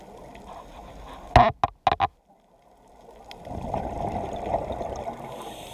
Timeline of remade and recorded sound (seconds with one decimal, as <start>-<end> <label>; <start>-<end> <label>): 0.0-5.7 recorded